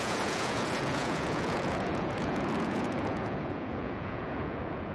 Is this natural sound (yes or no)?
no